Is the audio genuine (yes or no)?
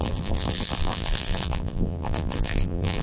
no